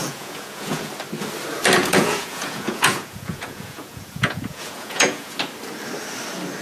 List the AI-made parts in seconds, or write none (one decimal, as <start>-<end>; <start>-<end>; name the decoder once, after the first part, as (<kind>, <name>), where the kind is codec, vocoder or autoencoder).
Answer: 0.0-0.9 (vocoder, Vocos); 1.8-5.4